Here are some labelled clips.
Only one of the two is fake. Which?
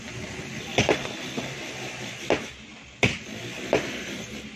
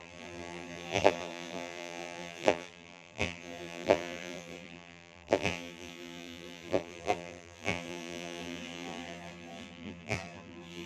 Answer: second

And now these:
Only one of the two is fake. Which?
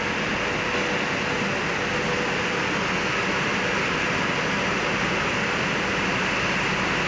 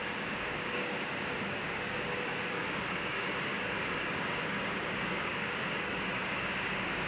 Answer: second